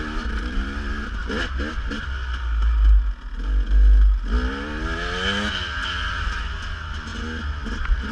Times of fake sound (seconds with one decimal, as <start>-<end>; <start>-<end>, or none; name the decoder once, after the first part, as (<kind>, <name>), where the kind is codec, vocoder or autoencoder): none